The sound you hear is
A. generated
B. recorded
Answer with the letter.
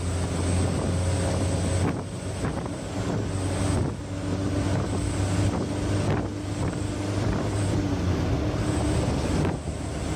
B